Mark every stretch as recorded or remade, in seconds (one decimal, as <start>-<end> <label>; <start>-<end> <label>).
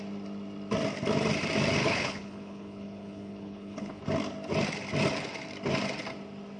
0.0-1.8 recorded; 1.8-4.0 remade; 4.0-6.6 recorded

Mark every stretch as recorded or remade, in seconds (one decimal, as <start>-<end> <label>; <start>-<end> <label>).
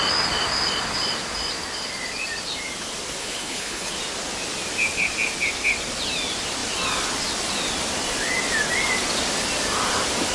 0.0-3.2 recorded; 3.2-3.9 remade; 3.9-10.3 recorded